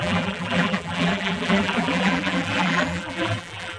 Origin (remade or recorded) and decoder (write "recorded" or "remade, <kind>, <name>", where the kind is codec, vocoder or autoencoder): remade, vocoder, BigVGAN v2